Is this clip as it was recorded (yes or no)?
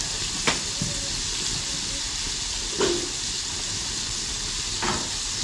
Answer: yes